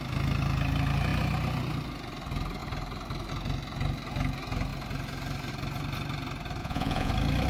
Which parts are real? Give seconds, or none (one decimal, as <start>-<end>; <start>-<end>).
0.0-6.6; 7.1-7.5